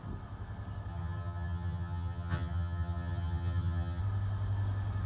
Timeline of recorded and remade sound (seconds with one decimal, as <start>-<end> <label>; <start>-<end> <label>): 0.0-0.9 recorded; 0.9-4.0 remade; 4.0-5.1 recorded